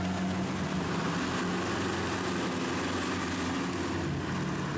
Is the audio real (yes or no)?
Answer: yes